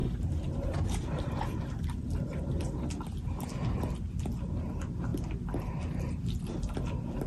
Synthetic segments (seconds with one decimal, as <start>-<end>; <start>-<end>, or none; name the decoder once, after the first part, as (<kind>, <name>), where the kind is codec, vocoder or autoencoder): 0.0-2.9 (vocoder, BigVGAN v2)